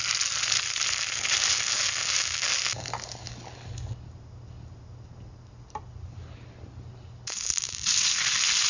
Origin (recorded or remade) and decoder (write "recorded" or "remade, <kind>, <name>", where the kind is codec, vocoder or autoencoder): recorded